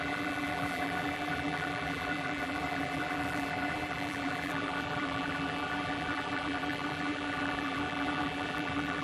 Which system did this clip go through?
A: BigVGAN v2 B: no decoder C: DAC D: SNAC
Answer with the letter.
A